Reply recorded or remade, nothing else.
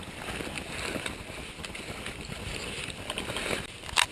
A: recorded